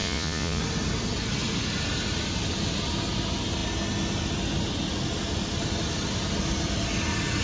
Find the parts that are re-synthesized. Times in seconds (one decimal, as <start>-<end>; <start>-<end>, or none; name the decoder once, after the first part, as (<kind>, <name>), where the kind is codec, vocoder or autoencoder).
0.0-0.6 (vocoder, Vocos)